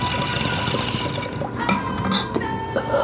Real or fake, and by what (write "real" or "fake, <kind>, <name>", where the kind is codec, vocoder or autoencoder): real